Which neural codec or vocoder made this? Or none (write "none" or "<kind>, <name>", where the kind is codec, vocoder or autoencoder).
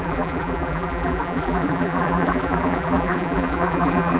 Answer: vocoder, BigVGAN v2